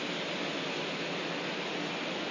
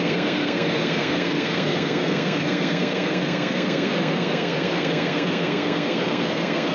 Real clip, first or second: first